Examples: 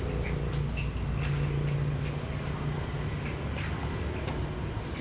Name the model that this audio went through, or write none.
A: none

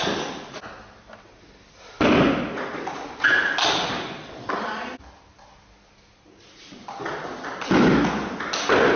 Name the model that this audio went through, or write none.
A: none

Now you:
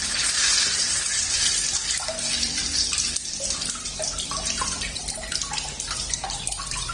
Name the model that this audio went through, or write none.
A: vocoder, BigVGAN v2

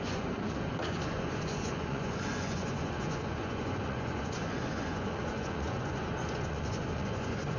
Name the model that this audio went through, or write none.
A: vocoder, Vocos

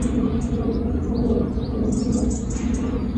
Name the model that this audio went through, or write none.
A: none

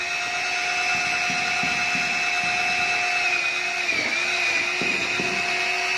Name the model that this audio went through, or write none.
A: none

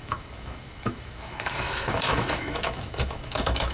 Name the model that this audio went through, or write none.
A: autoencoder, DAC-VAE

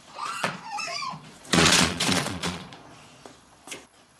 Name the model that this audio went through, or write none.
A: vocoder, Vocos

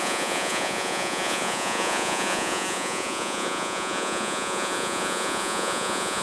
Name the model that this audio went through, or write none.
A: vocoder, Vocos